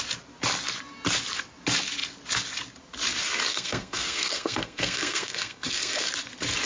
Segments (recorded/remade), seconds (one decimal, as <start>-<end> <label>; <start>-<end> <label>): 0.0-3.5 recorded; 3.5-6.1 remade; 6.1-6.7 recorded

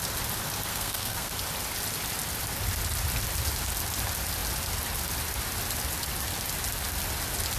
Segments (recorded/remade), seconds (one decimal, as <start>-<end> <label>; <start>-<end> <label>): 0.0-0.7 recorded; 0.7-1.3 remade; 1.3-7.6 recorded

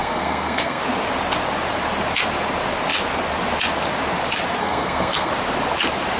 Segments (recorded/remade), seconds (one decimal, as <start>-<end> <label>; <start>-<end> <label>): 0.0-0.8 remade; 0.8-4.6 recorded; 4.6-5.3 remade; 5.3-6.2 recorded

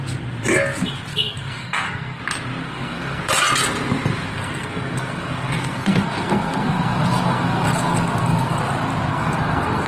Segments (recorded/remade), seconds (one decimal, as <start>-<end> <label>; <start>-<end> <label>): 0.0-1.1 recorded; 1.1-2.2 remade; 2.2-2.6 recorded; 2.6-3.2 remade; 3.2-4.3 recorded; 4.3-8.6 remade; 8.6-9.1 recorded; 9.1-9.9 remade